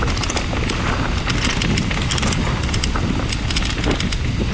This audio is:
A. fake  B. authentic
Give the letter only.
B